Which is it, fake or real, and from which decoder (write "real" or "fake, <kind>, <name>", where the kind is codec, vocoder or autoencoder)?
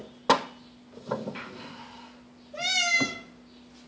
real